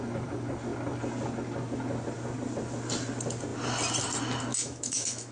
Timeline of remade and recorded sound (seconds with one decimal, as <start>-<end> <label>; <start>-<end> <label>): 0.0-4.5 recorded; 4.5-5.3 remade